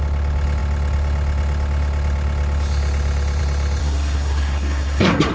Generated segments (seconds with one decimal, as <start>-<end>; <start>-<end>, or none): 3.8-5.3